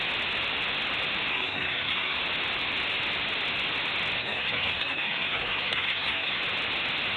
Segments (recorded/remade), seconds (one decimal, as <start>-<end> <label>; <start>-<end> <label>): 0.0-1.3 recorded; 1.3-2.2 remade; 2.2-4.2 recorded; 4.2-6.4 remade; 6.4-7.2 recorded

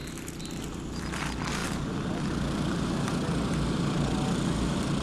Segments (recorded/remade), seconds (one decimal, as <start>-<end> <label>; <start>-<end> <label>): 0.0-1.0 remade; 1.0-5.0 recorded

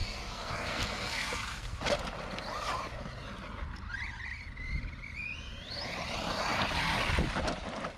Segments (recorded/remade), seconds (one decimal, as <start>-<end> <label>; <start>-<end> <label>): 0.0-1.8 remade; 1.8-8.0 recorded

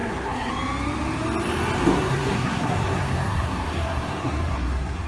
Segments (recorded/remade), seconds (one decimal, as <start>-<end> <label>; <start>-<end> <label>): 0.0-0.5 remade; 0.5-1.8 recorded; 1.8-5.1 remade

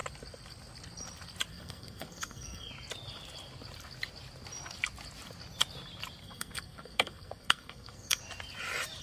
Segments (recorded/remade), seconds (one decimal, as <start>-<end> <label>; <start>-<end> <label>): 0.0-1.5 recorded; 1.5-2.7 remade; 2.7-6.2 recorded; 6.2-8.2 remade; 8.2-9.0 recorded